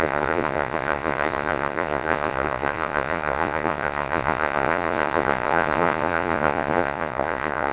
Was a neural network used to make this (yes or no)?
yes